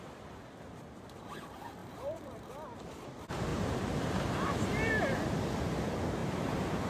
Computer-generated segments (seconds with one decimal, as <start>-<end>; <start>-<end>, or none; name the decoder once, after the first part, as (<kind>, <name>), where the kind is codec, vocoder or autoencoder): 1.8-2.5 (vocoder, BigVGAN v2); 3.5-4.9; 6.2-6.9